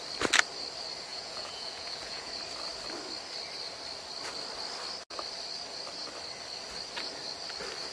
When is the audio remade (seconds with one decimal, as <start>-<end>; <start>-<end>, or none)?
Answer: 1.1-2.3